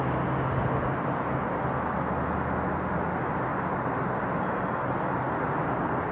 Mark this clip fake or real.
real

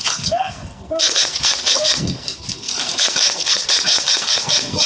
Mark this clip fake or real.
fake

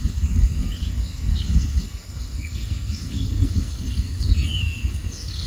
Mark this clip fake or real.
fake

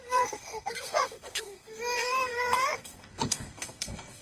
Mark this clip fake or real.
fake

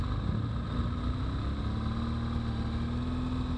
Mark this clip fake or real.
real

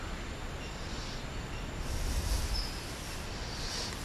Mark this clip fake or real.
real